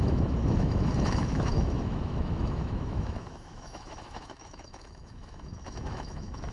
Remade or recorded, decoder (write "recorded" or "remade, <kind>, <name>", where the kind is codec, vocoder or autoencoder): remade, autoencoder, DAC-VAE